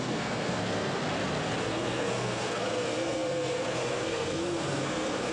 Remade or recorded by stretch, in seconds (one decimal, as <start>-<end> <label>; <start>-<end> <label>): 0.0-1.0 remade; 1.0-1.6 recorded; 1.6-5.3 remade